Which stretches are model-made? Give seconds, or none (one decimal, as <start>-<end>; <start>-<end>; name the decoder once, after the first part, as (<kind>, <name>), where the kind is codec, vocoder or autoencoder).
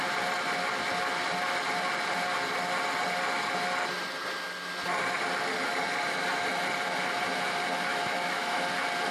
7.9-8.6 (autoencoder, DAC-VAE)